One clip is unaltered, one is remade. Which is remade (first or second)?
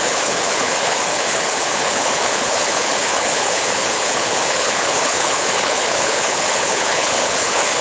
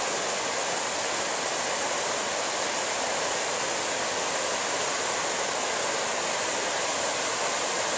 first